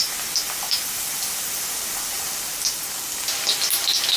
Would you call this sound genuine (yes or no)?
yes